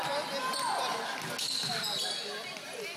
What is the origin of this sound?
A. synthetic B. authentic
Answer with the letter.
B